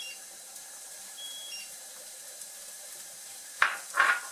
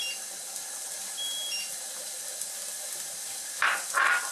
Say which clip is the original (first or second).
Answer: second